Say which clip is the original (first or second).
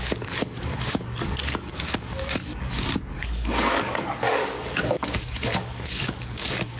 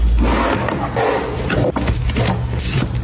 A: second